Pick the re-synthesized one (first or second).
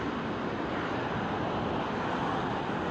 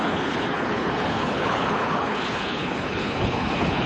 second